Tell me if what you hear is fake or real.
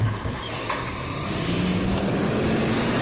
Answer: real